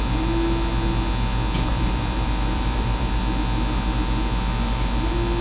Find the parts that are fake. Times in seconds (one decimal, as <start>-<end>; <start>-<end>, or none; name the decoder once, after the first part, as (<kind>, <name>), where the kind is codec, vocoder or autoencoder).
1.7-3.2 (vocoder, BigVGAN v2)